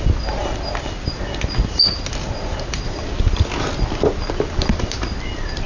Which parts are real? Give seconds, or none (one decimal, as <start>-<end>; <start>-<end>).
0.0-5.7